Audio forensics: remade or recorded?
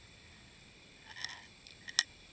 recorded